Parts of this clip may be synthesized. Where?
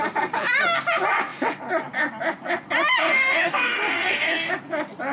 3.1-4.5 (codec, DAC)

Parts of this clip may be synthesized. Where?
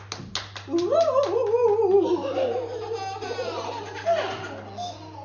none